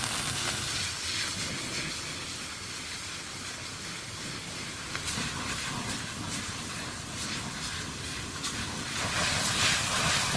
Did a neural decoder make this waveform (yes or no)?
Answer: no